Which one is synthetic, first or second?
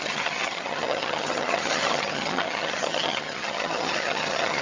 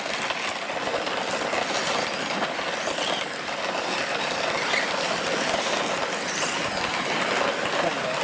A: first